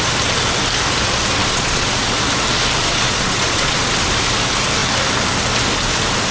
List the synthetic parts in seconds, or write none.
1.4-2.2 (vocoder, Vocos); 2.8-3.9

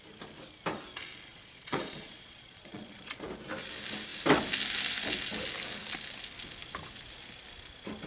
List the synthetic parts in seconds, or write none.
1.3-3.2 (vocoder, Vocos)

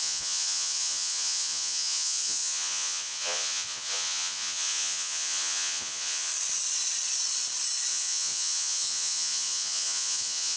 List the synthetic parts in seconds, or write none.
0.0-6.3 (vocoder, Vocos); 7.9-10.6

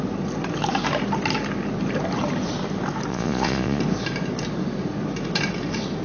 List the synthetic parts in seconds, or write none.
3.1-3.8 (vocoder, Vocos)

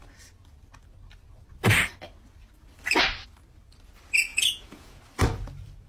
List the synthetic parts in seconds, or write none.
4.3-5.0 (vocoder, Vocos)